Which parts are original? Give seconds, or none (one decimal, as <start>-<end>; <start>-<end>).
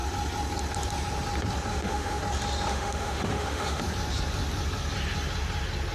0.0-1.7; 2.2-2.7; 3.8-5.9